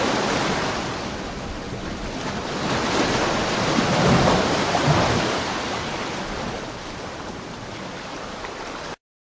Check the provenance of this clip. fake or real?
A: real